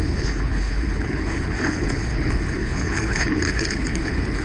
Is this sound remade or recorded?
remade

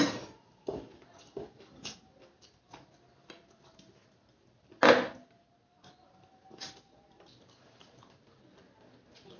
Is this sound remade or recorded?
recorded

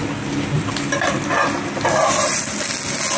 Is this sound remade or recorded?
recorded